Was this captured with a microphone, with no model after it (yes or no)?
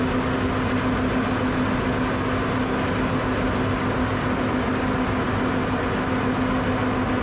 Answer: yes